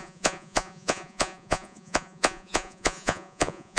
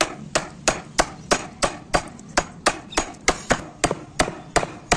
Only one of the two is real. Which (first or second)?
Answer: second